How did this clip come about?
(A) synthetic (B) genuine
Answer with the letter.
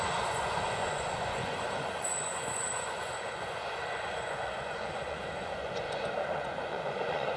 A